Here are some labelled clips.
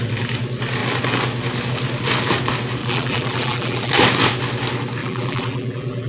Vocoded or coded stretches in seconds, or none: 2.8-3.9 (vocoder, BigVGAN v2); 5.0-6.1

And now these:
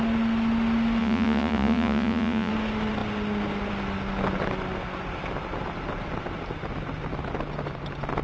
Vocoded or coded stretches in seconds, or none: 1.0-2.5 (vocoder, Vocos)

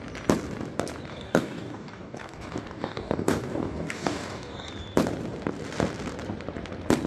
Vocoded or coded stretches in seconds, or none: 1.1-4.7 (codec, DAC)

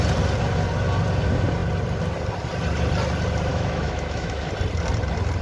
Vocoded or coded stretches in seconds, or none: 3.5-4.5 (autoencoder, DAC-VAE)

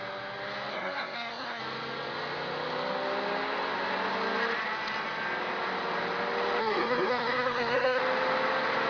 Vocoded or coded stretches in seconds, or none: 0.7-1.6 (codec, SNAC); 6.6-8.0

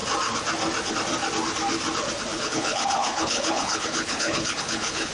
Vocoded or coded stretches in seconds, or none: 2.3-5.1 (codec, HILCodec)